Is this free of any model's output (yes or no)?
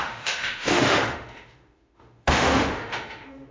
no